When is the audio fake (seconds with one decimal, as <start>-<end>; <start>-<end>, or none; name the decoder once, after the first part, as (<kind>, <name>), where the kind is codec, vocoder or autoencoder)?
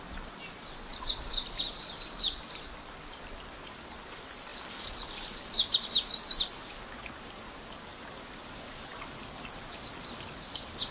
none